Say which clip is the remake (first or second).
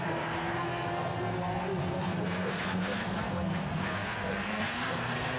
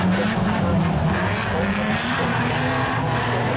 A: first